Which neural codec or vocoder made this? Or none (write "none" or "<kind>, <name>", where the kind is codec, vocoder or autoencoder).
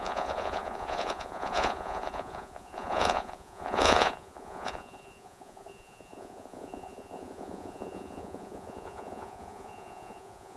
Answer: vocoder, Vocos